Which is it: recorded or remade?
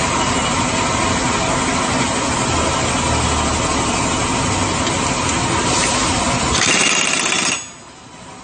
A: recorded